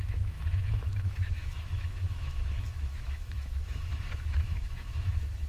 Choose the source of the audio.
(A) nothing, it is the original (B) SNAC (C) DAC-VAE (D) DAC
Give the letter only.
C